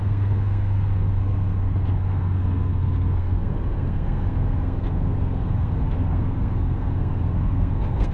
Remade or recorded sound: remade